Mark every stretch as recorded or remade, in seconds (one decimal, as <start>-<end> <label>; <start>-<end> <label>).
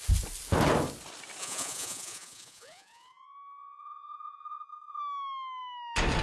0.0-1.4 recorded; 1.4-5.0 remade; 5.0-6.2 recorded